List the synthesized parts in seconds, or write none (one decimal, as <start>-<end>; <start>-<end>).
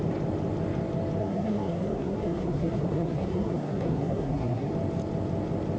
1.2-4.7